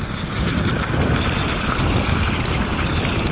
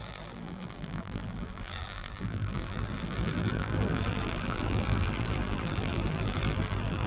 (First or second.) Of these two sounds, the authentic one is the first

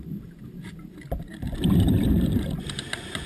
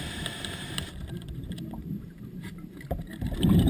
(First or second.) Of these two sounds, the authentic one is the first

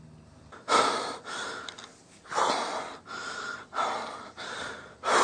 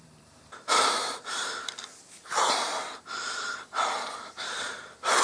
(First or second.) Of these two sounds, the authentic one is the first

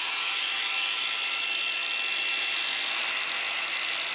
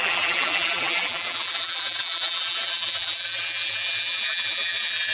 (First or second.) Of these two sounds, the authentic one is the first